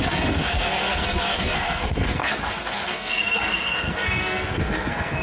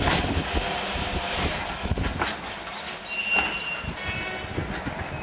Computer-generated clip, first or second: first